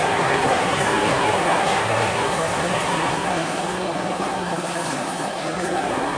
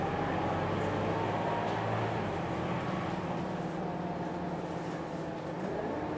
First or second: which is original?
second